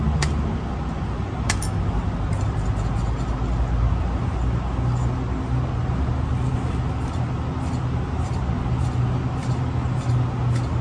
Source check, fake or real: real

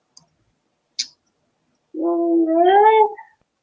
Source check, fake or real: real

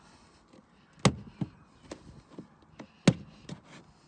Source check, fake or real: real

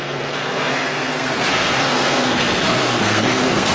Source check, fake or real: fake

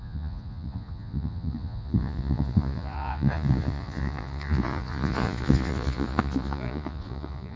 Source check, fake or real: fake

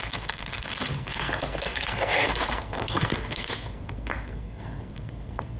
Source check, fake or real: fake